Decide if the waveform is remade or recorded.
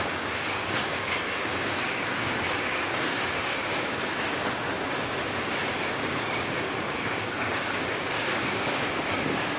remade